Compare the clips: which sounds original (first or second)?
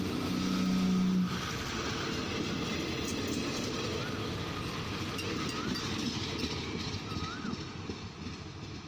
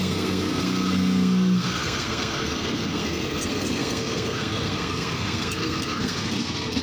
first